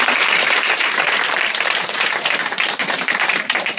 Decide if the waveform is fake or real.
fake